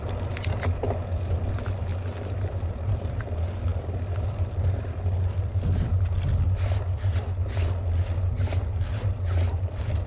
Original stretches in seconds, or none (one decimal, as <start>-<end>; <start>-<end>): 0.0-1.9; 3.2-10.1